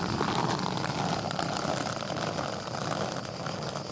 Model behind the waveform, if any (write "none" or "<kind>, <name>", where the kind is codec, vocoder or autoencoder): none